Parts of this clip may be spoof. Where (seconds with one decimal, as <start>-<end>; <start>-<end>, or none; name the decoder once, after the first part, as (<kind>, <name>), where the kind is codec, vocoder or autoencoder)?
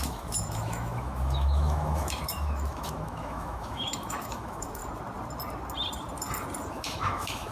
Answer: 0.0-4.8 (autoencoder, DAC-VAE); 6.7-7.5